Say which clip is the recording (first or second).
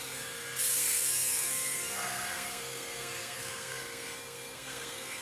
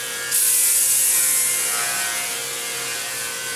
second